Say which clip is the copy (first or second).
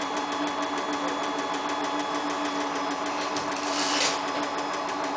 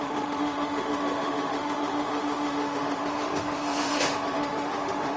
second